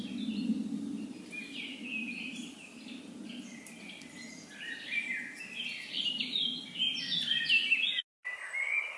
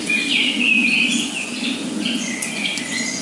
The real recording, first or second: first